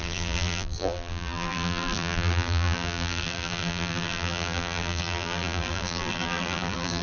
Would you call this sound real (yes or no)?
no